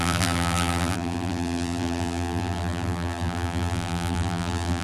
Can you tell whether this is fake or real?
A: fake